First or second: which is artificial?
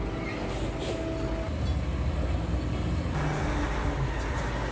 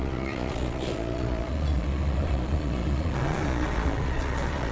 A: second